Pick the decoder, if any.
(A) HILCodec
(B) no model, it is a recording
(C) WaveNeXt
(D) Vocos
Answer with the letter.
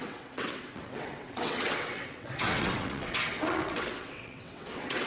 C